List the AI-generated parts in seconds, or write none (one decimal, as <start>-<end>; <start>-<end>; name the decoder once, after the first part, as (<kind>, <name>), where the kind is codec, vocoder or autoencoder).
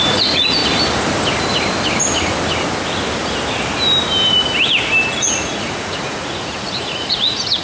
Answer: 0.0-0.6 (vocoder, Vocos); 5.2-7.6